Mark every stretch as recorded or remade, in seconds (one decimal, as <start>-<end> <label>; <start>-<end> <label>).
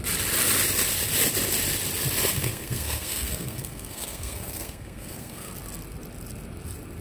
0.0-2.4 recorded; 2.4-5.5 remade; 5.5-7.0 recorded